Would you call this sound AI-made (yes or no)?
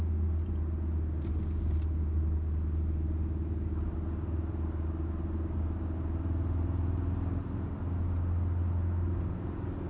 no